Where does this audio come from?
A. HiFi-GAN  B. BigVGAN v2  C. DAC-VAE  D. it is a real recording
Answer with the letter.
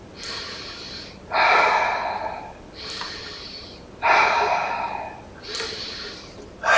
D